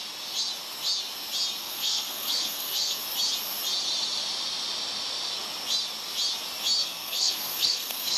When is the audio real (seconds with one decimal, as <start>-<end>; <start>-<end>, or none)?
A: 0.0-1.6; 3.0-6.8